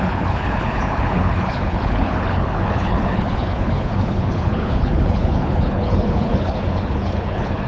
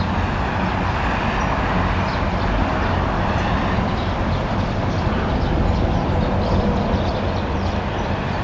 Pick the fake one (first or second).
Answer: first